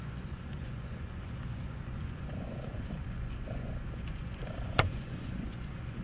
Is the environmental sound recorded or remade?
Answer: remade